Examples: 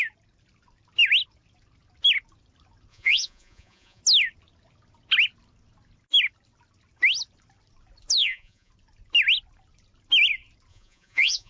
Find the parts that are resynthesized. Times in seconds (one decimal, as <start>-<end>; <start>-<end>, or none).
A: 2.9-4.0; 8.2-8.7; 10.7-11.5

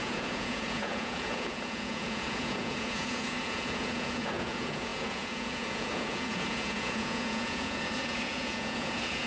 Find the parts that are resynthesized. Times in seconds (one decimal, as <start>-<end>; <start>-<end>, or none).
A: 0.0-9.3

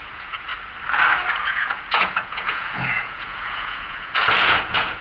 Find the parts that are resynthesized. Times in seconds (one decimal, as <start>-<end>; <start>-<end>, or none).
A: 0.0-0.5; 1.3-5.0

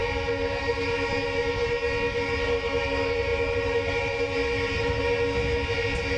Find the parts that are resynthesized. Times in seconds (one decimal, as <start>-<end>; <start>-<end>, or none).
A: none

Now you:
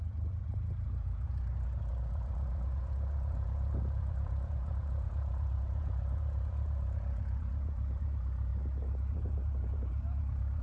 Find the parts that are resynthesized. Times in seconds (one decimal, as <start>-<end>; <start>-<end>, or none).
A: 0.0-8.5; 9.1-10.6

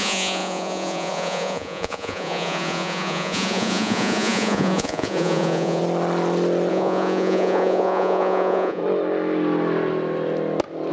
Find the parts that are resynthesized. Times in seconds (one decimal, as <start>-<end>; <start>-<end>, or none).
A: 0.0-5.8; 6.7-8.8